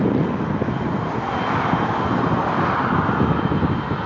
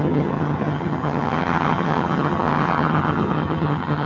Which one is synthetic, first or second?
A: second